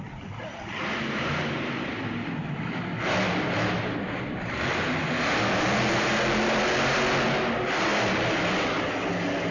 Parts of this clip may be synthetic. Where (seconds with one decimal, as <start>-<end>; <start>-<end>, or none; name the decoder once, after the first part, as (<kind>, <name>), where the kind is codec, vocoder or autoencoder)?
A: none